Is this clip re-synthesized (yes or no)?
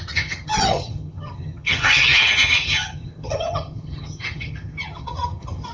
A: yes